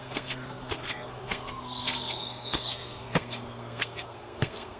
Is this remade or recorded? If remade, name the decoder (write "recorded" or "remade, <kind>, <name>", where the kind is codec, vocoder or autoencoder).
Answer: remade, codec, SNAC